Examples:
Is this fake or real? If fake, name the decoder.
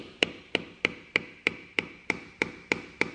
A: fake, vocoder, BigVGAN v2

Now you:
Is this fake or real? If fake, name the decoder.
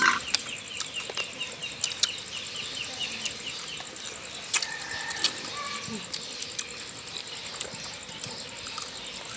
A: real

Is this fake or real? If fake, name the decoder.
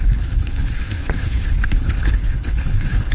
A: fake, codec, HILCodec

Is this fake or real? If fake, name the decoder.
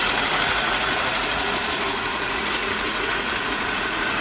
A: fake, vocoder, Vocos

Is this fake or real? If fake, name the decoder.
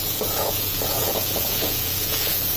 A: fake, vocoder, Vocos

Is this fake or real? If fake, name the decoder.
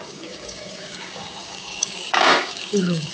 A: fake, codec, DAC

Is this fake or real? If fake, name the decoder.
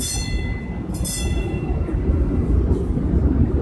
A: real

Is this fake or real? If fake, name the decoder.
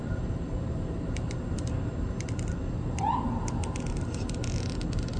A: real